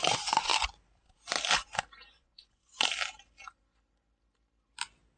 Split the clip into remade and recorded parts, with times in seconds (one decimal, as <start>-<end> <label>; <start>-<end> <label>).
0.0-0.5 remade; 0.5-2.1 recorded; 2.1-2.7 remade; 2.7-5.2 recorded